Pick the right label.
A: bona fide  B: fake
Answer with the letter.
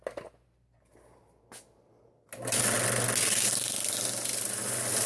A